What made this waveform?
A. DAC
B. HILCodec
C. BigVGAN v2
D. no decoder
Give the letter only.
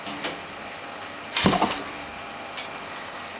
D